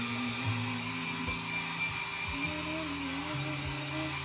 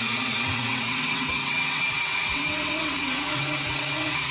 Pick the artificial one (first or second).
second